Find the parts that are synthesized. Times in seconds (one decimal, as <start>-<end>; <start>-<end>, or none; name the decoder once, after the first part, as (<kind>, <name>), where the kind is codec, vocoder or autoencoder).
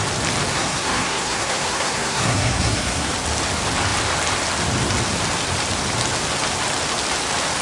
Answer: 0.5-3.1 (codec, SNAC)